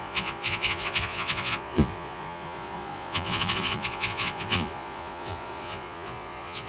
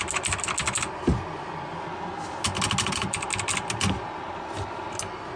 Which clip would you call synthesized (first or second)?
first